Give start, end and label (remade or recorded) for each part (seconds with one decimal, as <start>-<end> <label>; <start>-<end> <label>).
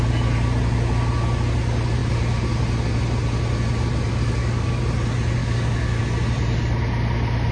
0.0-4.1 recorded; 4.1-4.8 remade; 4.8-5.4 recorded; 5.4-6.0 remade; 6.0-7.5 recorded